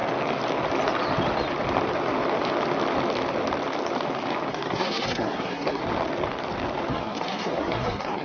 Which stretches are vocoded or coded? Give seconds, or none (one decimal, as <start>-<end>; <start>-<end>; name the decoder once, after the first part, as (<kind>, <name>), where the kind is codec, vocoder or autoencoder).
4.5-5.8 (codec, SNAC); 6.9-8.2

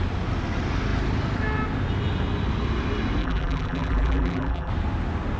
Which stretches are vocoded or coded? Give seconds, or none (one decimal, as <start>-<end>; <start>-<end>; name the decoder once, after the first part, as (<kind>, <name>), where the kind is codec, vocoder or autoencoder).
3.2-4.7 (vocoder, BigVGAN v2)